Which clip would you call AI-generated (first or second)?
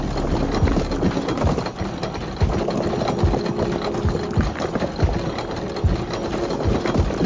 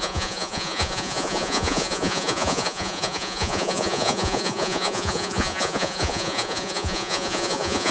second